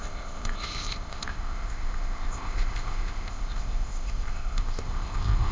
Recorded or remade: remade